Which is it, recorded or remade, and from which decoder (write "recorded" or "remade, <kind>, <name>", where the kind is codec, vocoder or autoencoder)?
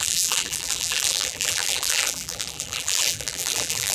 remade, vocoder, BigVGAN v2